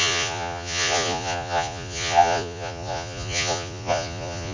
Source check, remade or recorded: remade